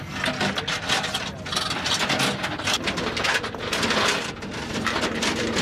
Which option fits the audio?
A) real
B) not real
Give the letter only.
A